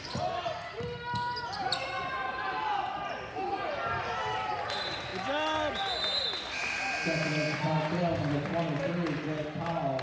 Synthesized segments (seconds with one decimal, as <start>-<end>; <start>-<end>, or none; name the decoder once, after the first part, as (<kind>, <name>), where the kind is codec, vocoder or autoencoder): none

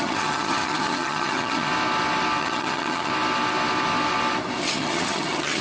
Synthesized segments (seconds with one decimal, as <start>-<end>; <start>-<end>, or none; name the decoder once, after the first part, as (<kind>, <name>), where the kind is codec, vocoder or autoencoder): 0.0-1.7 (vocoder, HiFi-GAN); 2.4-3.1; 4.6-5.6